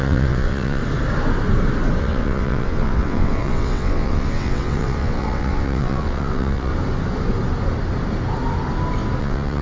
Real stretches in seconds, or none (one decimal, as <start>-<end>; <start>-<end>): 0.8-2.0; 6.7-9.2